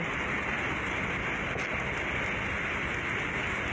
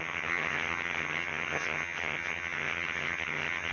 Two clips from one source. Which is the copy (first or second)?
second